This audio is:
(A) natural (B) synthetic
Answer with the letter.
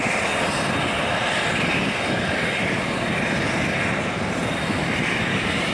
A